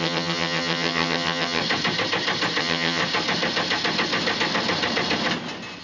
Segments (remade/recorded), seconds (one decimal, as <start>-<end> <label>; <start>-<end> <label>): 0.0-1.6 remade; 1.6-2.6 recorded; 2.6-3.0 remade; 3.0-5.8 recorded